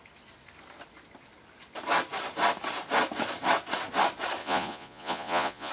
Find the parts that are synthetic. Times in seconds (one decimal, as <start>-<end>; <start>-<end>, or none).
4.4-5.7